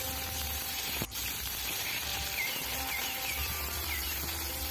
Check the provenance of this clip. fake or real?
fake